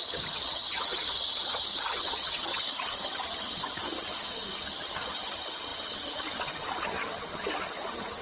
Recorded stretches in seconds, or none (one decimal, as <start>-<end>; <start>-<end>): none